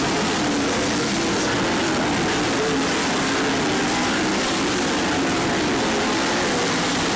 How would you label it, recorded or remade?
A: recorded